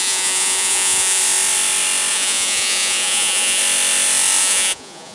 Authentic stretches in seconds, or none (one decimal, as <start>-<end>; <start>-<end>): 1.2-2.1; 3.6-4.4